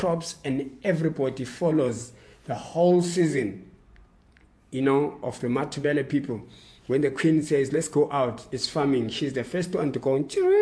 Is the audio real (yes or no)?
no